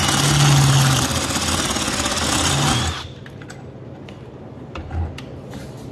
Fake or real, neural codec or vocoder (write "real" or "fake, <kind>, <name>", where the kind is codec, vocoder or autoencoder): real